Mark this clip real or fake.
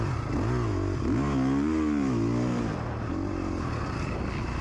real